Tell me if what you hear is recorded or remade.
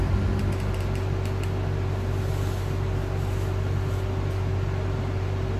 recorded